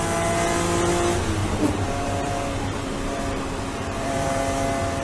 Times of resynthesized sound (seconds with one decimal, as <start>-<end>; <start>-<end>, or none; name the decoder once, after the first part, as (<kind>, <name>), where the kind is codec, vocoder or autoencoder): 1.4-4.4 (vocoder, BigVGAN v2)